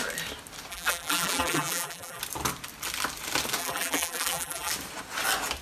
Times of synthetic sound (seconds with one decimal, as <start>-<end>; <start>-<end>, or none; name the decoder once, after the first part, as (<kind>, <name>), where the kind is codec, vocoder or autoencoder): 0.7-2.2 (vocoder, BigVGAN v2); 3.6-4.7